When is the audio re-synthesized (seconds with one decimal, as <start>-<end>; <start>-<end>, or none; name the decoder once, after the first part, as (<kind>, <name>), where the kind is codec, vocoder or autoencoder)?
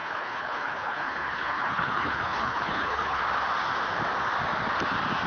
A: 0.0-3.2 (codec, HILCodec)